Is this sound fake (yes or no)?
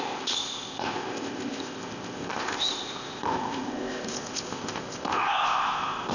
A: yes